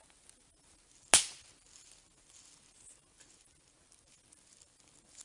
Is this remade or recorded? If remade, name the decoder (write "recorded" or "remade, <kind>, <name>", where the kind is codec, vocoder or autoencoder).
recorded